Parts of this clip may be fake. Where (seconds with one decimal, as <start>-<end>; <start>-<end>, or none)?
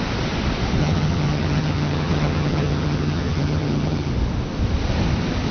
0.8-4.1